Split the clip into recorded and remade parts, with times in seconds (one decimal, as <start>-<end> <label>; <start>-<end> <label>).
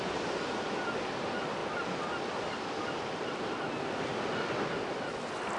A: 0.0-5.6 recorded